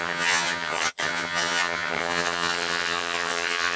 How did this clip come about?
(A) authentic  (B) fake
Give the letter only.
B